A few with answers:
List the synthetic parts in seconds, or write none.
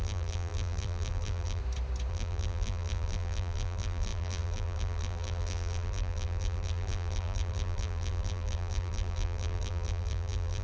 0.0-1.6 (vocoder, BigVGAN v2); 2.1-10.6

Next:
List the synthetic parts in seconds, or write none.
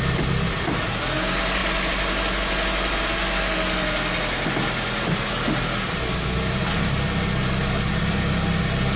none